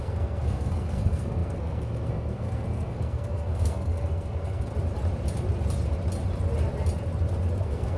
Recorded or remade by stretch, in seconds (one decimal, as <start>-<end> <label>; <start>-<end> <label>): 0.0-4.7 remade; 4.7-7.6 recorded; 7.6-8.0 remade